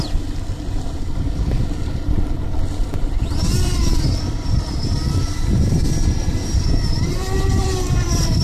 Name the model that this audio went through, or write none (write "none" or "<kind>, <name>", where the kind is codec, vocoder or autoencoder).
vocoder, BigVGAN v2